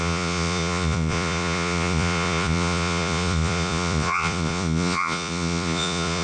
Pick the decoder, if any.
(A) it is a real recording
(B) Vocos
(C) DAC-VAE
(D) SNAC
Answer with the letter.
B